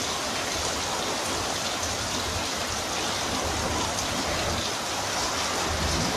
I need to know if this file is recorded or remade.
recorded